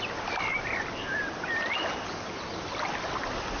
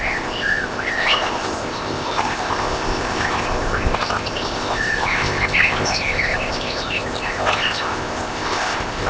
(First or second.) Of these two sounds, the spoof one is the second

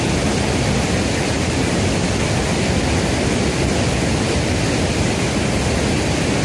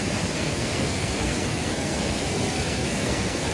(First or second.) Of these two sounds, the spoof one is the second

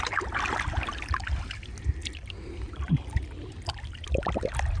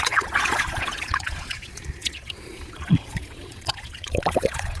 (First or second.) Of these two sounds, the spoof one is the second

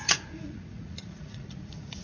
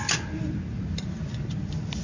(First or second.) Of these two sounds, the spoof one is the first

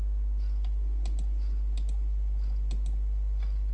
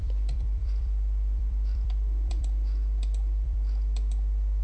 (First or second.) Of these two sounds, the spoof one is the second